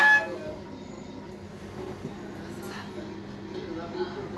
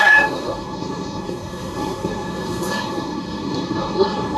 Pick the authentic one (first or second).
first